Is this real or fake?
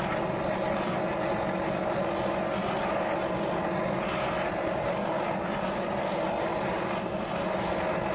real